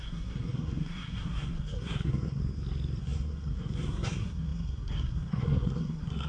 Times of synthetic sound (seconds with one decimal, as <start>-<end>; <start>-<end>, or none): 0.0-2.4; 3.0-6.3